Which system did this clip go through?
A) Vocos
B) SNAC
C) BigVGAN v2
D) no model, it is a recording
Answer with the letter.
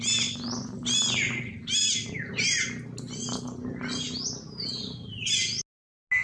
D